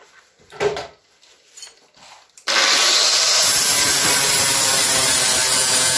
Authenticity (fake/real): fake